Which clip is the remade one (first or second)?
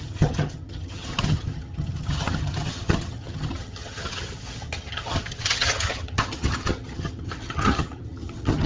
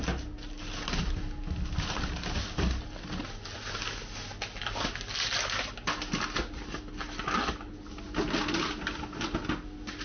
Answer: first